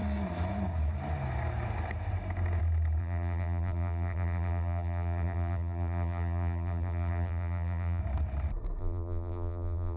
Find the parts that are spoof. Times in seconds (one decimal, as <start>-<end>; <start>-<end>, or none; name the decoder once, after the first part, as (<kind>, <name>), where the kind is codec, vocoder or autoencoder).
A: 3.0-8.0 (vocoder, BigVGAN v2); 8.8-10.0